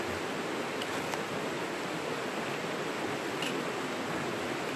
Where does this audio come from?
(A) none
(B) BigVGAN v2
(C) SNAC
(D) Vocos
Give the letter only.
A